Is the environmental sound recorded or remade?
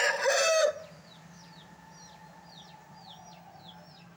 recorded